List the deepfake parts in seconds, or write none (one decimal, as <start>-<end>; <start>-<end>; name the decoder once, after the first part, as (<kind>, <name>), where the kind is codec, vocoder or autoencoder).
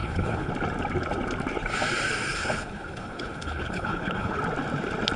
0.0-0.5 (codec, HILCodec); 2.3-4.4